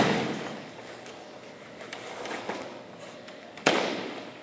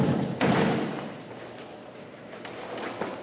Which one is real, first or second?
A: second